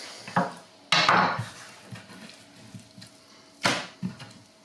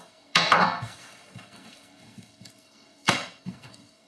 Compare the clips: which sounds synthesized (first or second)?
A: second